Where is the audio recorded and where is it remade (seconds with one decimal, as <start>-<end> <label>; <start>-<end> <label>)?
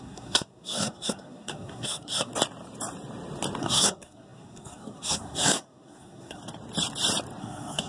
0.0-2.3 remade; 2.3-3.6 recorded; 3.6-6.4 remade; 6.4-7.4 recorded; 7.4-7.9 remade